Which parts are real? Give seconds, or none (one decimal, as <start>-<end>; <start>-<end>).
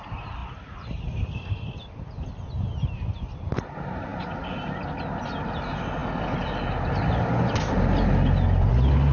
0.0-9.1